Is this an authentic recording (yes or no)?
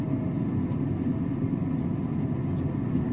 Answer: yes